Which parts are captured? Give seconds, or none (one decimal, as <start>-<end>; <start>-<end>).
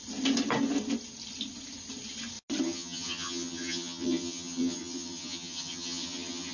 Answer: 0.0-2.6